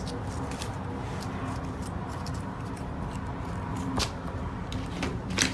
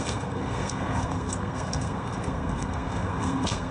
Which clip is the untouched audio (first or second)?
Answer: first